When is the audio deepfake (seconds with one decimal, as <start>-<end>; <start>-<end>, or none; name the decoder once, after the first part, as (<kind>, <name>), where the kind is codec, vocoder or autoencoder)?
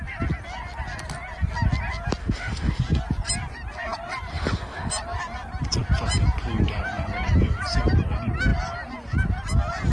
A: 2.2-2.8 (autoencoder, DAC-VAE); 4.3-4.9